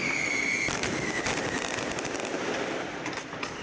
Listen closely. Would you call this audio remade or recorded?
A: recorded